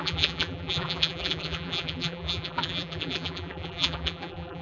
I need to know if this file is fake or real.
fake